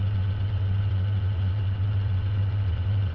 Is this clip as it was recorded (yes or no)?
no